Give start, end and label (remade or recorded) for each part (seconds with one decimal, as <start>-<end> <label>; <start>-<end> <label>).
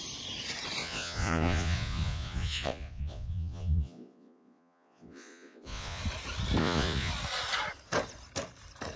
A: 0.0-0.8 recorded; 0.8-6.0 remade; 6.0-6.6 recorded; 6.6-7.1 remade; 7.1-9.0 recorded